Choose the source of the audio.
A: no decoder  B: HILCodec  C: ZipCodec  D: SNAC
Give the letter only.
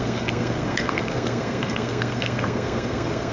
D